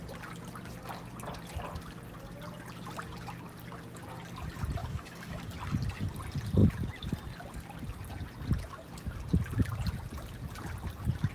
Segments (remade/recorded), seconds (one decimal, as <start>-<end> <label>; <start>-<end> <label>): 0.0-4.8 recorded; 4.8-5.4 remade; 5.4-11.3 recorded